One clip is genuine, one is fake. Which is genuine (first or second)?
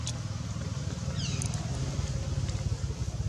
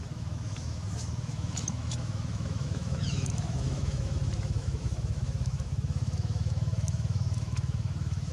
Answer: first